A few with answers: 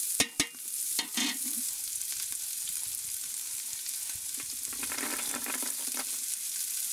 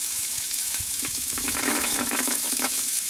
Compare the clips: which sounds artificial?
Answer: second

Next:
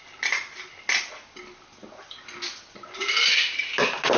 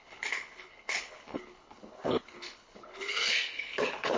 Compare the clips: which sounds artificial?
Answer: second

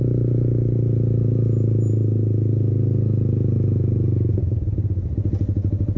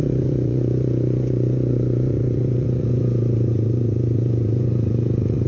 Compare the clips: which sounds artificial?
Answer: second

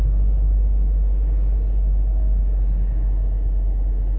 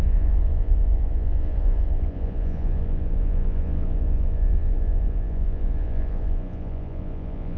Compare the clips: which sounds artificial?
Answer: second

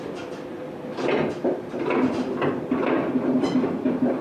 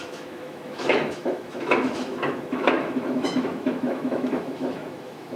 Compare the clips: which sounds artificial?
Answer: second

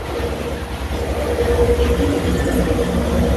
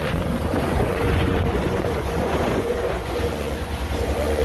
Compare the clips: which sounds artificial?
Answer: second